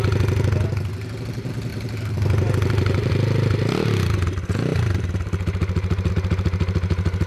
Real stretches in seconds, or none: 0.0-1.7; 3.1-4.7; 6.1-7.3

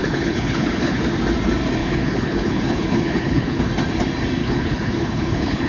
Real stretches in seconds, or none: 1.0-1.8; 3.7-4.4